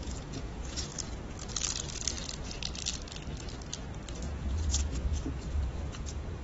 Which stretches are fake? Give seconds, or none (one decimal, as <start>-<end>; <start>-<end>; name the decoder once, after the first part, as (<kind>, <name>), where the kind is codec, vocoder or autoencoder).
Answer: 0.0-0.9 (vocoder, Vocos); 4.4-6.4